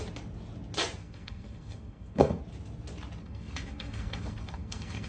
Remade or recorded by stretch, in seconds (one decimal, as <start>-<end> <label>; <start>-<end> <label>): 0.0-1.0 recorded; 1.0-2.4 remade; 2.4-3.2 recorded; 3.2-5.1 remade